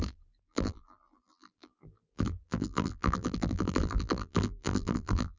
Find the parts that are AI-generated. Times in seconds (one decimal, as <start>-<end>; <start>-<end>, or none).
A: 0.0-5.4